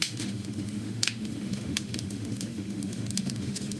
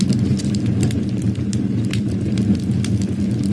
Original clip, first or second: second